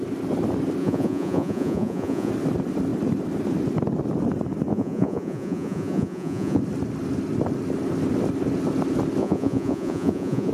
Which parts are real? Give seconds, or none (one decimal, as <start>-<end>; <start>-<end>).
0.0-0.8; 2.3-4.7; 6.6-9.2